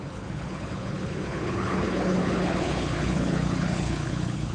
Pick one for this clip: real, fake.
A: fake